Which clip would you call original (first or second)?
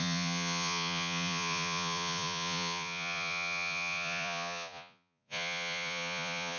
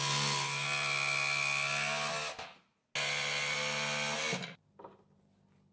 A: second